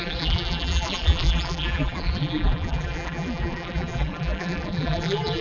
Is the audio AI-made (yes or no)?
yes